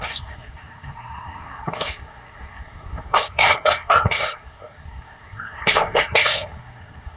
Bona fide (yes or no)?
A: no